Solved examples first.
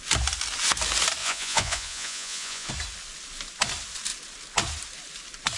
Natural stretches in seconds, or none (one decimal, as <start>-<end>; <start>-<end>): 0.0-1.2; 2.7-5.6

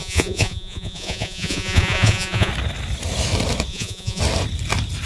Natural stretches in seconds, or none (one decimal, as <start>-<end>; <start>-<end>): 2.5-3.7; 4.2-5.1

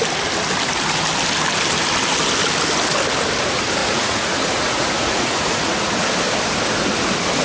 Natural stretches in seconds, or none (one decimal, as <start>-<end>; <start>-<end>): 0.0-3.8; 6.0-7.4